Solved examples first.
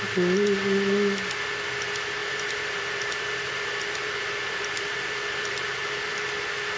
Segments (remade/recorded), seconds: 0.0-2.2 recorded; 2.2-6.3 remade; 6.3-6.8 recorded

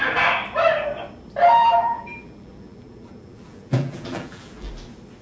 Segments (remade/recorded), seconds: 0.0-1.6 recorded; 1.6-4.7 remade; 4.7-5.2 recorded

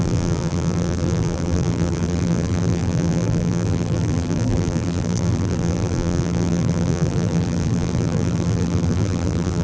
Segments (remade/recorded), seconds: 0.0-9.6 remade

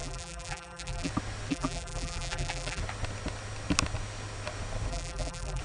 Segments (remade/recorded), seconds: 0.0-1.1 remade; 1.1-1.5 recorded; 1.5-2.8 remade; 2.8-4.9 recorded; 4.9-5.6 remade

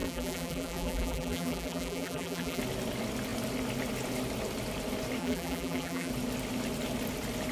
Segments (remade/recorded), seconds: 0.0-2.6 remade; 2.6-5.2 recorded; 5.2-6.1 remade; 6.1-7.5 recorded

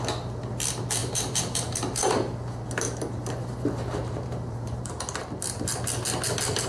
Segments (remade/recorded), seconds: 0.0-1.0 recorded; 1.0-5.0 remade; 5.0-6.7 recorded